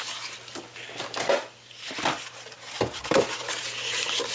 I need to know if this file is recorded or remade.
recorded